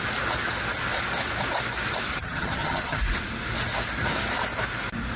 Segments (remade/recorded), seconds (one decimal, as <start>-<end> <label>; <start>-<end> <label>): 0.0-2.1 recorded; 2.1-3.0 remade; 3.0-5.2 recorded